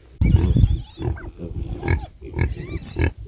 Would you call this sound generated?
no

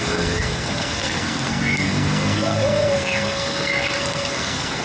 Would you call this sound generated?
yes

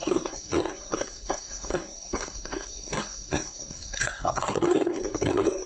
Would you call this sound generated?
yes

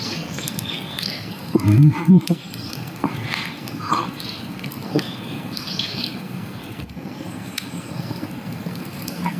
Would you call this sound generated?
yes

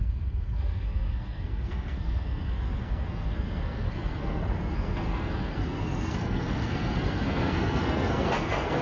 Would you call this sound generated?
yes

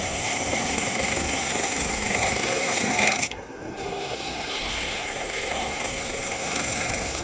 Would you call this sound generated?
yes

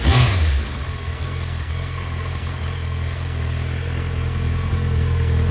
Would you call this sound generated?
yes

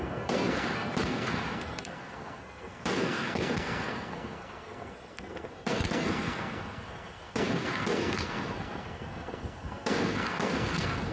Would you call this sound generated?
yes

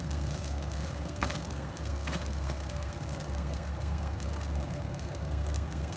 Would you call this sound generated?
yes